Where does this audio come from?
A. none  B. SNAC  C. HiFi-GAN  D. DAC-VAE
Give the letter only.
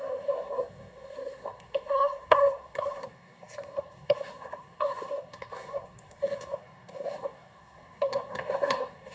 B